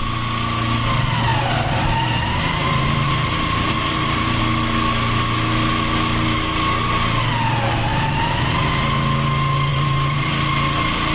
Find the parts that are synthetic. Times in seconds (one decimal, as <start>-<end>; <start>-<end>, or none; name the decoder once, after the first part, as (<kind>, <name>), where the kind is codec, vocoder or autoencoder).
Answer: 1.3-4.4 (vocoder, BigVGAN v2); 7.9-8.7; 9.7-10.3